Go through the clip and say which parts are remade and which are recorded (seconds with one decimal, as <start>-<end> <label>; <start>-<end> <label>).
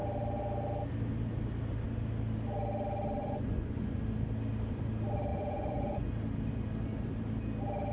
0.0-3.2 recorded; 3.2-4.0 remade; 4.0-5.3 recorded; 5.3-6.1 remade; 6.1-7.9 recorded